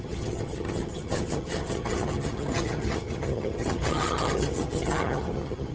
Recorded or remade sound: remade